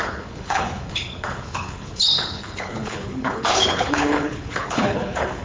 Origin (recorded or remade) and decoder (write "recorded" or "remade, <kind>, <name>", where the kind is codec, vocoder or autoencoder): remade, codec, HILCodec